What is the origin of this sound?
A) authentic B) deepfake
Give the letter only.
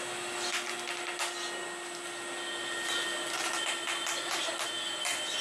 A